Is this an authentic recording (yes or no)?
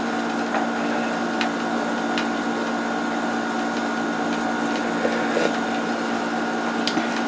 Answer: yes